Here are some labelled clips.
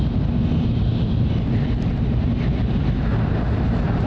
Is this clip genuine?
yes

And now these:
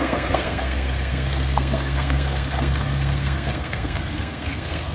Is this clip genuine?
no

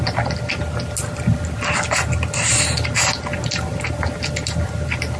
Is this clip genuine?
yes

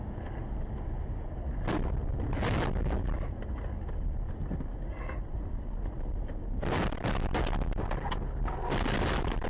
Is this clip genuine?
yes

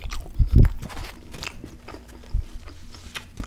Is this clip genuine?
yes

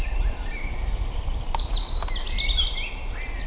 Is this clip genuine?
yes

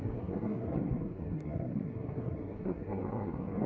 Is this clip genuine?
no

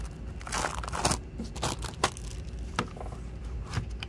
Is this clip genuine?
yes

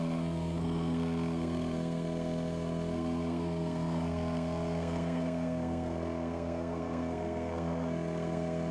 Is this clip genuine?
no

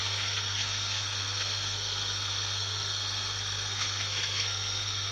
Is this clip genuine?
no